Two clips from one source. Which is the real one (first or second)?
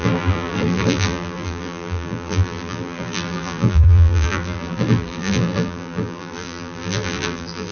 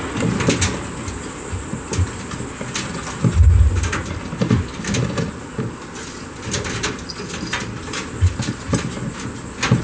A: second